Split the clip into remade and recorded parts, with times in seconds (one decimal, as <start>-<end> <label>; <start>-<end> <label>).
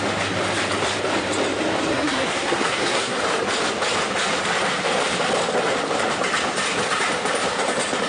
0.0-1.9 recorded; 1.9-3.2 remade; 3.2-8.1 recorded